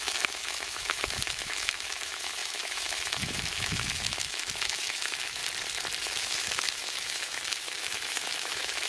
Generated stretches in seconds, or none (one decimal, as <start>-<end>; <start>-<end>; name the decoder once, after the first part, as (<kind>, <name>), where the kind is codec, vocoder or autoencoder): 0.0-5.4 (autoencoder, DAC-VAE); 6.0-8.9